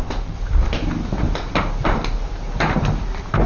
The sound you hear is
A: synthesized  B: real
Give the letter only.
B